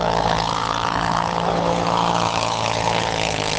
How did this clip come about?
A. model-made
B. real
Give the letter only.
A